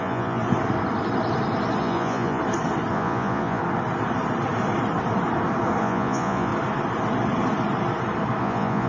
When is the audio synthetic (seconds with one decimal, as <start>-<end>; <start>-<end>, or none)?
0.0-0.4; 1.8-2.4; 2.9-3.6; 5.8-6.5; 8.4-8.9